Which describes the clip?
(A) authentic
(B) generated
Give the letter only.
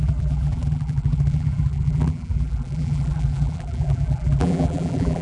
B